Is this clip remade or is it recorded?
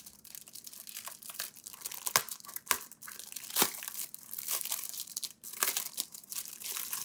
remade